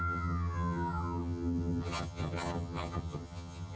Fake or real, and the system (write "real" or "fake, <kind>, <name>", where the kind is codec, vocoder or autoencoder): fake, vocoder, HiFi-GAN